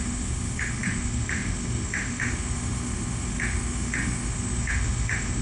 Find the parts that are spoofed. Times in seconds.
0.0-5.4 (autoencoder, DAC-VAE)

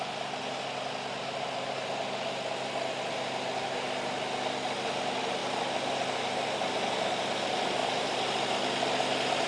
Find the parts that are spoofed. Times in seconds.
none

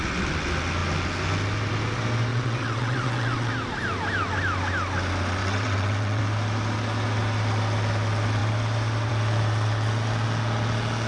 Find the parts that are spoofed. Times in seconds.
2.3-3.5 (vocoder, WaveNeXt); 5.4-6.2